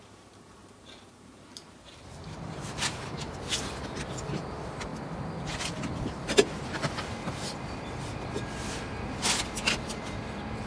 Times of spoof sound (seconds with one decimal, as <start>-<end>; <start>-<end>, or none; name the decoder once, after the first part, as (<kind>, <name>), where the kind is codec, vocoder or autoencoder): 0.6-3.3 (vocoder, BigVGAN v2)